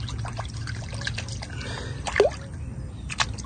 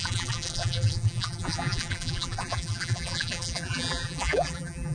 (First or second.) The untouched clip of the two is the first